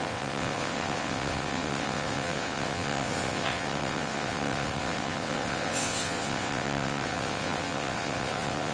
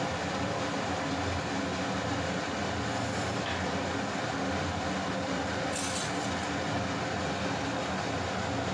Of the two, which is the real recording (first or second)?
second